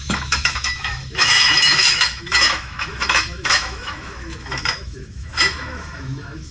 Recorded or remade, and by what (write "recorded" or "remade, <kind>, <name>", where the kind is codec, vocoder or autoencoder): remade, autoencoder, DAC-VAE